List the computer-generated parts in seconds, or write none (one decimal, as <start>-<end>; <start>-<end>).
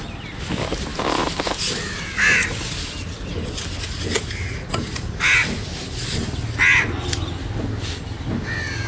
none